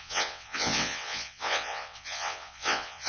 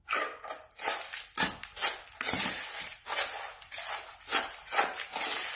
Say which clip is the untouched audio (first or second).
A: second